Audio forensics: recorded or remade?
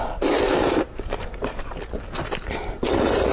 remade